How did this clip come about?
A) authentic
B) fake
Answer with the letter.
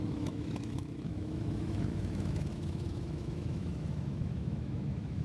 B